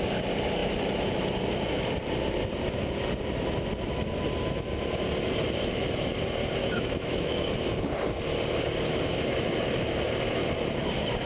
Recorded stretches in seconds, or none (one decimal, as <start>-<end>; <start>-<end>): 0.0-6.6; 7.5-11.3